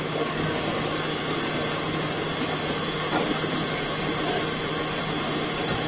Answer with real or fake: real